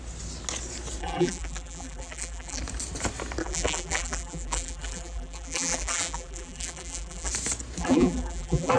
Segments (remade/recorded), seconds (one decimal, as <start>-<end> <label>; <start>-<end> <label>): 0.0-1.0 recorded; 1.0-2.6 remade; 2.6-3.4 recorded; 3.4-7.3 remade; 7.3-7.8 recorded; 7.8-8.8 remade